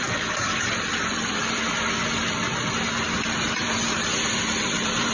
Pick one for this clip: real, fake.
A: fake